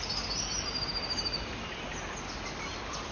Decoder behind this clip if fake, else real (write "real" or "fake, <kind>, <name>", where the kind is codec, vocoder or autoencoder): real